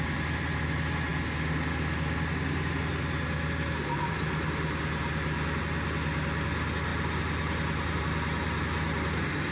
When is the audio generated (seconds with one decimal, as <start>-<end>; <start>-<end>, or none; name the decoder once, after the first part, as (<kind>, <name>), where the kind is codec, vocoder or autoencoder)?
none